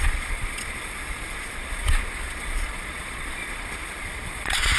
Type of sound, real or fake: fake